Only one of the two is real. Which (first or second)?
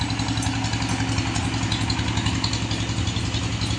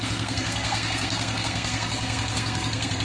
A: first